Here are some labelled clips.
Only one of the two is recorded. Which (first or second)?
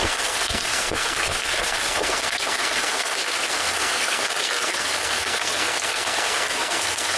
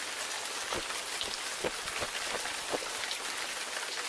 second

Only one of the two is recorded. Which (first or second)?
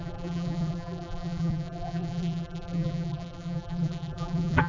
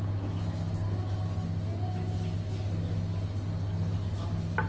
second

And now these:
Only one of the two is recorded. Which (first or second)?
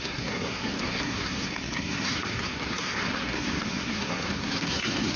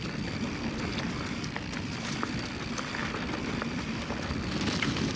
second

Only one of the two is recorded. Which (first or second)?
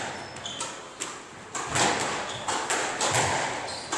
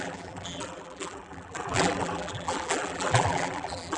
first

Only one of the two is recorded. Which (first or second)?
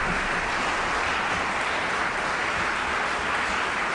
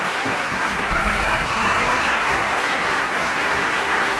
first